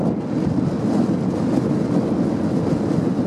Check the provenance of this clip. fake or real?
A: real